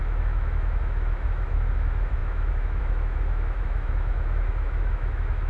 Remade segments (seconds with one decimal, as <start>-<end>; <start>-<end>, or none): 0.0-5.5